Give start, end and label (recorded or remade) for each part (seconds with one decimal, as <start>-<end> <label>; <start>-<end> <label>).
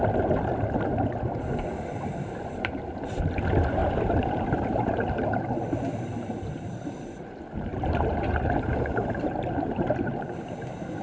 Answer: 0.0-3.8 recorded; 3.8-5.4 remade; 5.4-7.7 recorded; 7.7-10.1 remade; 10.1-11.0 recorded